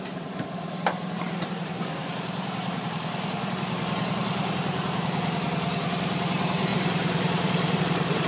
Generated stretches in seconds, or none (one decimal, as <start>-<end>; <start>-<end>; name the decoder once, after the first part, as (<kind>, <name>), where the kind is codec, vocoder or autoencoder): 0.0-8.3 (vocoder, BigVGAN v2)